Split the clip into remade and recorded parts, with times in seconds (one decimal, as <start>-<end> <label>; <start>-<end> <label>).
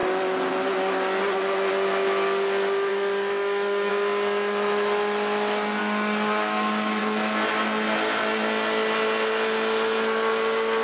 0.0-2.9 recorded; 2.9-3.9 remade; 3.9-5.8 recorded; 5.8-7.0 remade; 7.0-10.8 recorded